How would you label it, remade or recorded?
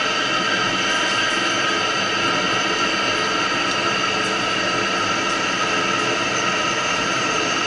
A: recorded